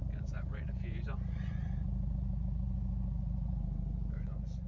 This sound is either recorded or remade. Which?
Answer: remade